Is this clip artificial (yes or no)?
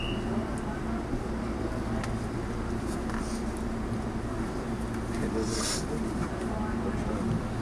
no